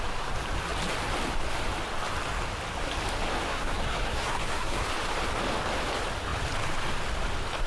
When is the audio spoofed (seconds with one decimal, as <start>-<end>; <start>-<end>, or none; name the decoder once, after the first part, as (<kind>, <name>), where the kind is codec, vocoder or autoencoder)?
3.4-4.9 (codec, SNAC)